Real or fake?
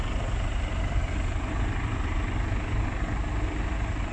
real